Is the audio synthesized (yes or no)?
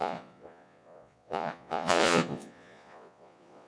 yes